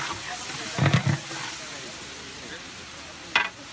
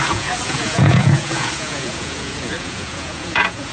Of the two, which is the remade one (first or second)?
second